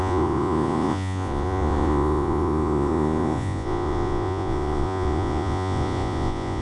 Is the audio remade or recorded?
remade